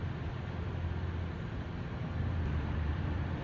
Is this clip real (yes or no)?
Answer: yes